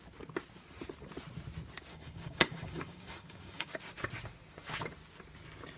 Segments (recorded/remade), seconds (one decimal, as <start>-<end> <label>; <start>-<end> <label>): 0.0-1.9 recorded; 1.9-3.7 remade; 3.7-5.8 recorded